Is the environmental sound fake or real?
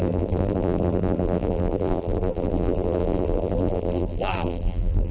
fake